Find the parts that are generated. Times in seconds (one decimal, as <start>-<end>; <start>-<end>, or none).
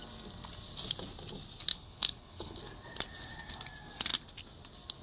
1.7-2.6